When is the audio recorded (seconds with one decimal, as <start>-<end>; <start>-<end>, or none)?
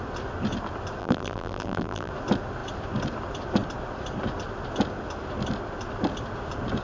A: 0.0-1.0; 2.1-6.8